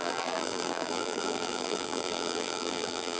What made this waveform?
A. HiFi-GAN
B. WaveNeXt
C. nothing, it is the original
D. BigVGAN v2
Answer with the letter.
D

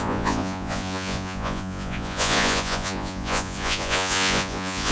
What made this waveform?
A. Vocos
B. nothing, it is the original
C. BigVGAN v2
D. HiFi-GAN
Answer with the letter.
A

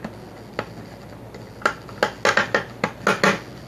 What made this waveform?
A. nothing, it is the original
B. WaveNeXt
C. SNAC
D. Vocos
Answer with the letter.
A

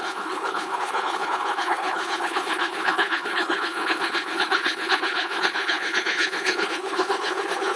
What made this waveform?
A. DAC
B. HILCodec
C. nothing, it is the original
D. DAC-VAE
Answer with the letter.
B